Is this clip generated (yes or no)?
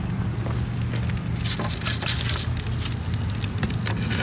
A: no